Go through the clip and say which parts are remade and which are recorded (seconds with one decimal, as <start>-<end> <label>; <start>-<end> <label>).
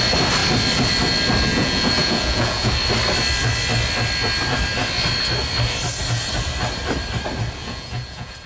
0.0-1.5 recorded; 1.5-2.7 remade; 2.7-7.6 recorded; 7.6-8.5 remade